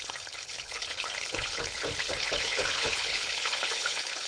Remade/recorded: remade